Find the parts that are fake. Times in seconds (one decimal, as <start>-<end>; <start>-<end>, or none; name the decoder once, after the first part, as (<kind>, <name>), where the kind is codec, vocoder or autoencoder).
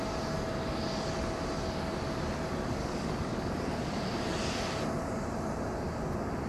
2.8-3.8 (codec, DAC)